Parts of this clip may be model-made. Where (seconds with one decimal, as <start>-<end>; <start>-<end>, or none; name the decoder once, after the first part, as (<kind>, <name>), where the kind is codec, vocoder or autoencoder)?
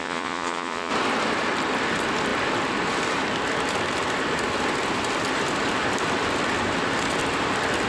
0.0-0.9 (vocoder, Vocos)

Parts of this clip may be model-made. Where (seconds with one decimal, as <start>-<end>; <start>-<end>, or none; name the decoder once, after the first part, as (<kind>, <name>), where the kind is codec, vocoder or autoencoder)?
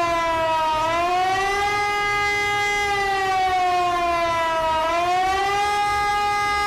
none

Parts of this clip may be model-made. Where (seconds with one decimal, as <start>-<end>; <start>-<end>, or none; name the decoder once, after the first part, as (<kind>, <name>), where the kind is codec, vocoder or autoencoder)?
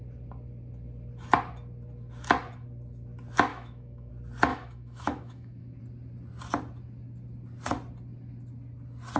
3.5-4.1 (autoencoder, DAC-VAE); 4.5-5.8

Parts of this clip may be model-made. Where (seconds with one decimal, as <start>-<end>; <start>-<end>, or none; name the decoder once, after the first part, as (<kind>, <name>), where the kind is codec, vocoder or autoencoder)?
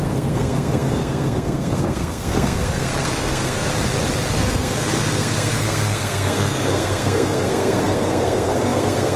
0.0-3.7 (codec, SNAC); 4.3-9.2